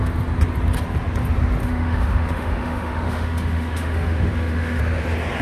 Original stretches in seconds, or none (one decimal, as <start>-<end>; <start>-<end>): 0.0-1.6; 4.8-5.4